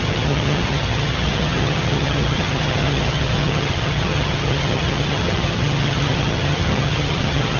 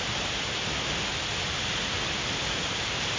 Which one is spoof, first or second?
first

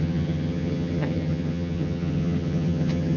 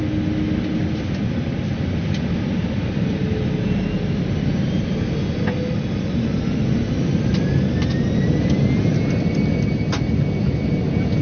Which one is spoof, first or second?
first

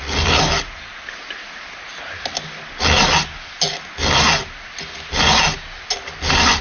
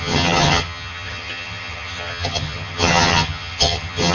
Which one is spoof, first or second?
second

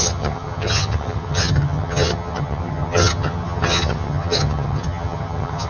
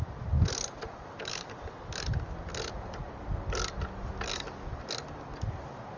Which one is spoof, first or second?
first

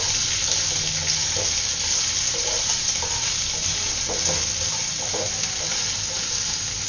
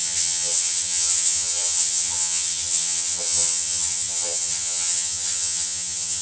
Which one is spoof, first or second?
second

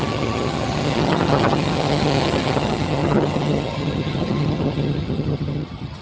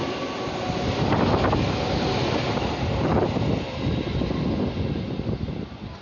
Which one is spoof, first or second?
first